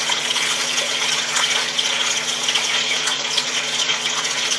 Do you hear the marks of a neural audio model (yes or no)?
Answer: yes